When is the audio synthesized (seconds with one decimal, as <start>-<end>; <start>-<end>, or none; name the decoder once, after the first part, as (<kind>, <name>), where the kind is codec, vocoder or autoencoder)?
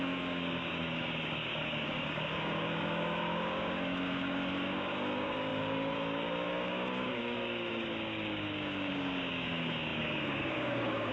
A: 0.0-11.1 (codec, DAC)